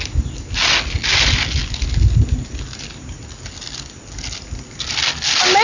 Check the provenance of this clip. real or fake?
real